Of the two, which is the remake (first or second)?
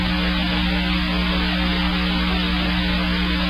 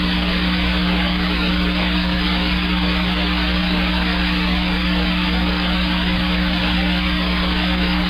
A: second